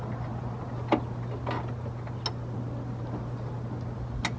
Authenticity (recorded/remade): recorded